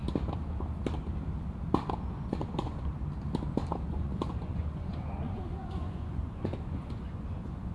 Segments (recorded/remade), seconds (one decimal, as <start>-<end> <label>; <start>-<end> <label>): 0.0-2.1 recorded; 2.1-2.9 remade; 2.9-3.9 recorded; 3.9-7.7 remade